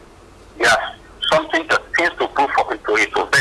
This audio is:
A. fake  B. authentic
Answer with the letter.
B